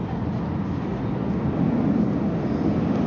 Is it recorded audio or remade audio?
recorded